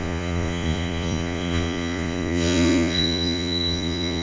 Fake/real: fake